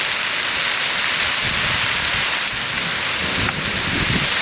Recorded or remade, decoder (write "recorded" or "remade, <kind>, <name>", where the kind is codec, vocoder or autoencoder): recorded